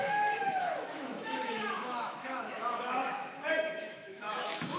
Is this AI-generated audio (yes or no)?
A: yes